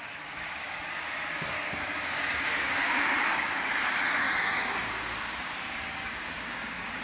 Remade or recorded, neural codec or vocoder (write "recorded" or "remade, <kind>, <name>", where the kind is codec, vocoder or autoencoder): remade, codec, DAC